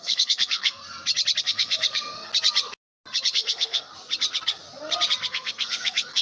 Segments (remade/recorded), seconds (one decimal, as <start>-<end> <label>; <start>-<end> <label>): 0.0-0.8 remade; 0.8-1.4 recorded; 1.4-2.3 remade; 2.3-3.3 recorded; 3.3-3.9 remade; 3.9-5.3 recorded; 5.3-6.2 remade